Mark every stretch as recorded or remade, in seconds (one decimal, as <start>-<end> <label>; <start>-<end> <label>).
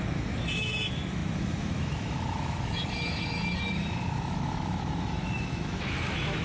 0.0-6.4 remade